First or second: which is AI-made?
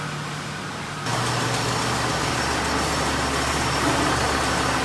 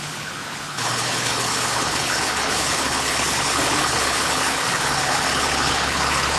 second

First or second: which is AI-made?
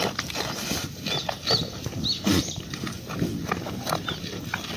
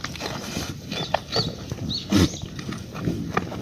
first